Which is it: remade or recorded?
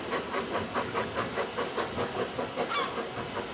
recorded